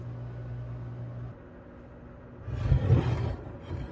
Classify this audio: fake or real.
real